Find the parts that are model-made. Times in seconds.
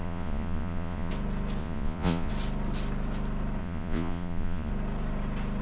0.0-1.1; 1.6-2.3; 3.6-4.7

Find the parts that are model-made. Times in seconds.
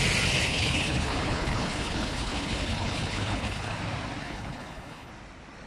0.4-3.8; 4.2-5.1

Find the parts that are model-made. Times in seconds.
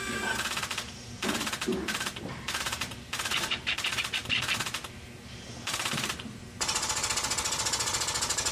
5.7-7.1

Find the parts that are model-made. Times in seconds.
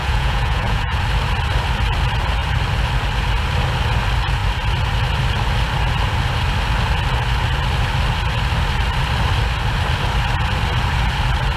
0.0-1.0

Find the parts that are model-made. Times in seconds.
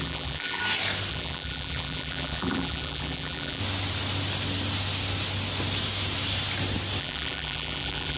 0.0-0.6; 1.1-3.6; 7.0-8.2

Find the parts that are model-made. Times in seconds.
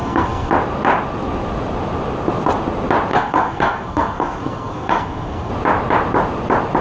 0.0-0.5; 3.1-5.5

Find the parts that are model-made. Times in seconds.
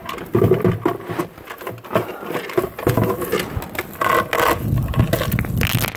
none